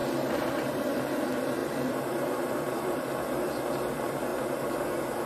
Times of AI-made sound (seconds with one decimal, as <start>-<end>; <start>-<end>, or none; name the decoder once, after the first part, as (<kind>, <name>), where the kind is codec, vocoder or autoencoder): 0.0-1.0 (vocoder, BigVGAN v2); 1.6-3.1; 4.3-5.3